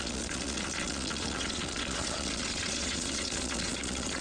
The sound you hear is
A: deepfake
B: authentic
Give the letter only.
A